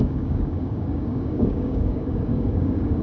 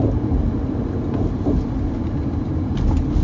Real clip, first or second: second